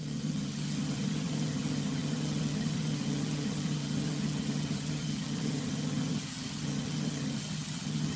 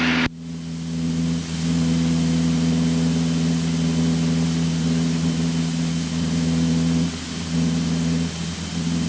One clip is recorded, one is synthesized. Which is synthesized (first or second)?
first